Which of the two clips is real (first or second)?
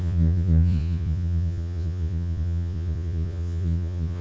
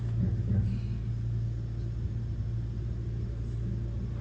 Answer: second